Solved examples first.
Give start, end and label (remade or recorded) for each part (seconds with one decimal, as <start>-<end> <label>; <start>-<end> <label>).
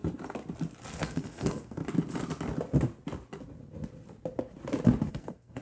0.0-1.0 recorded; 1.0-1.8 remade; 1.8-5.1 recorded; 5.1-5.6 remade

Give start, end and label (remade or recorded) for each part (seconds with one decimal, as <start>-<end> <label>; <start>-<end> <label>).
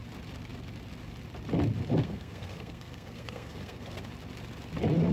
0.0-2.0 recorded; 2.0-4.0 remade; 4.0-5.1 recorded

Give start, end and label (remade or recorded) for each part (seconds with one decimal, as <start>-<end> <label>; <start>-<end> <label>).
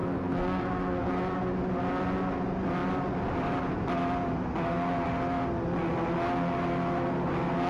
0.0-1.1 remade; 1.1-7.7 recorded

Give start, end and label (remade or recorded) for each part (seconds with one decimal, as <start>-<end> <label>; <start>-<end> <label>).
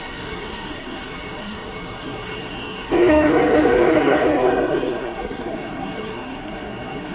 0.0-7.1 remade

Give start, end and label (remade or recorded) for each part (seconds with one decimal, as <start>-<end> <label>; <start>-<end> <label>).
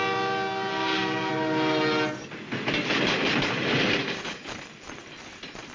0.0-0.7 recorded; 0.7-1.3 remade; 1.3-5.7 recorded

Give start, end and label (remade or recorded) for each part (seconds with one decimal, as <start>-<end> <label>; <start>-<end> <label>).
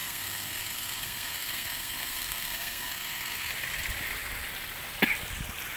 0.0-3.5 remade; 3.5-5.8 recorded